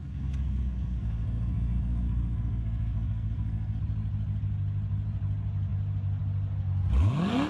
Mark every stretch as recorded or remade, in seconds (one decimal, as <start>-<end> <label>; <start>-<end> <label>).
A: 0.0-3.8 remade; 3.8-7.5 recorded